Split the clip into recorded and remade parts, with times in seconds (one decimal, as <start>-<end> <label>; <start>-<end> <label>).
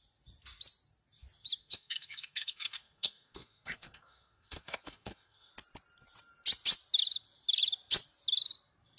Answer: 0.0-1.6 recorded; 1.6-5.5 remade; 5.5-9.0 recorded